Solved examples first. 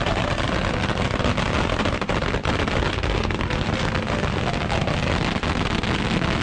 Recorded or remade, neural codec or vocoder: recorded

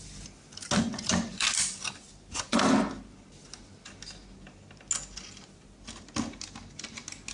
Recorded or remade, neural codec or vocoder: recorded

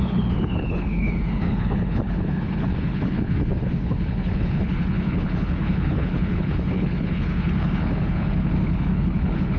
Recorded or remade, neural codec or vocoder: remade, codec, HILCodec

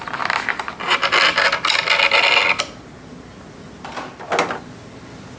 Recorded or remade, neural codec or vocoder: recorded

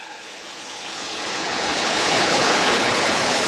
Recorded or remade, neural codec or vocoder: remade, codec, HILCodec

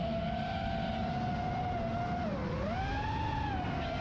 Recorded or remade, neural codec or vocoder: recorded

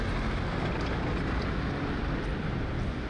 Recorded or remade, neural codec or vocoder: recorded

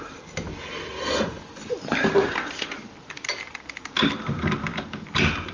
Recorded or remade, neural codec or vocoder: recorded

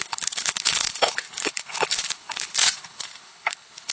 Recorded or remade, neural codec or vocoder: remade, codec, HILCodec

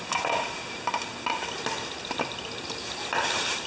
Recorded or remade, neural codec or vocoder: recorded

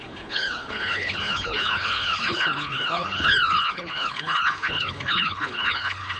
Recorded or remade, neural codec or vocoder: remade, codec, HILCodec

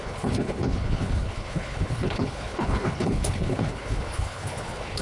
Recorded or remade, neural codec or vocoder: remade, codec, HILCodec